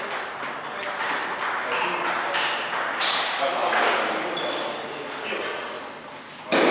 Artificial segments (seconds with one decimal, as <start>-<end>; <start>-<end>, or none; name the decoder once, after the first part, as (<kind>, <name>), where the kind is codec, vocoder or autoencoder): none